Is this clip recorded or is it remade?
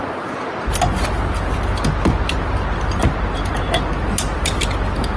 recorded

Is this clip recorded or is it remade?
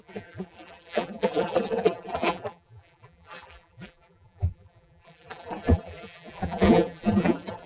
remade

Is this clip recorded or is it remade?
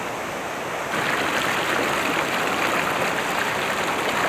recorded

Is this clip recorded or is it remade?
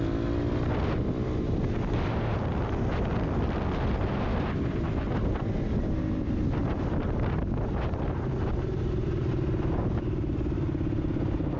recorded